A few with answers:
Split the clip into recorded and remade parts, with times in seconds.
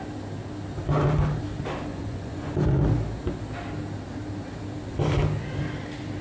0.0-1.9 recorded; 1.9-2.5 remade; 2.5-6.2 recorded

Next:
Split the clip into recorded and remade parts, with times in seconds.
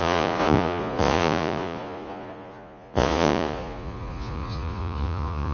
0.0-5.5 remade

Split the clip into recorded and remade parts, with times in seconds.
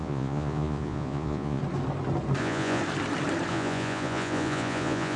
0.0-1.6 remade; 1.6-2.4 recorded; 2.4-2.8 remade; 2.8-3.5 recorded; 3.5-5.2 remade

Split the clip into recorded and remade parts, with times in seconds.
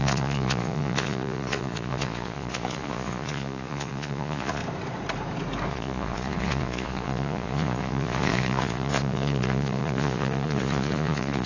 0.0-4.6 remade; 4.6-5.7 recorded; 5.7-11.5 remade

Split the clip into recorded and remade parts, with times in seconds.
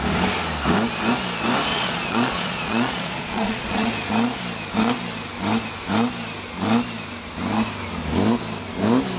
0.0-1.7 recorded; 1.7-3.9 remade; 3.9-9.2 recorded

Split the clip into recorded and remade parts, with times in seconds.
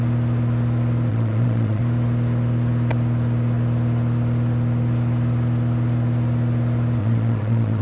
0.0-1.1 recorded; 1.1-1.8 remade; 1.8-7.0 recorded; 7.0-7.8 remade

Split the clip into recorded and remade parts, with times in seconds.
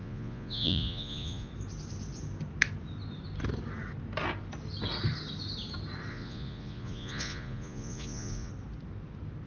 0.0-1.5 remade; 1.5-6.1 recorded; 6.1-8.5 remade; 8.5-9.5 recorded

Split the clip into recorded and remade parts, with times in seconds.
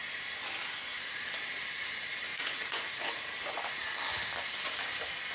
0.0-2.3 recorded; 2.3-3.8 remade; 3.8-5.3 recorded